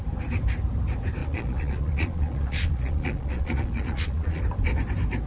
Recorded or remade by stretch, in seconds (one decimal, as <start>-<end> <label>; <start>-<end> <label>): 0.0-1.2 recorded; 1.2-4.4 remade; 4.4-5.3 recorded